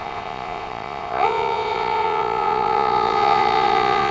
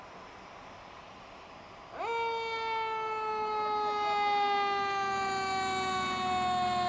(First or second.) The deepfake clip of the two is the first